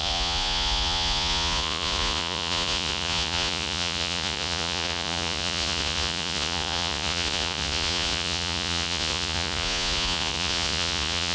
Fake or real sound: fake